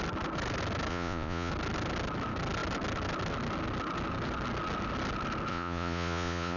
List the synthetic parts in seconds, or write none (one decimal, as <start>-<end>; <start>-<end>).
0.9-1.5; 5.5-6.6